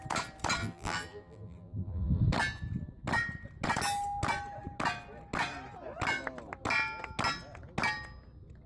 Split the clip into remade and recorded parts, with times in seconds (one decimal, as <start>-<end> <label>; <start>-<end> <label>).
0.0-0.6 recorded; 0.6-2.2 remade; 2.2-8.7 recorded